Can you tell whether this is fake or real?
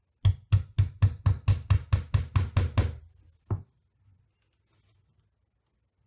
real